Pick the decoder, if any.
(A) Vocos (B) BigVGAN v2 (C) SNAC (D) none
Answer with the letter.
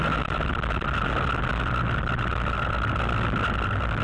D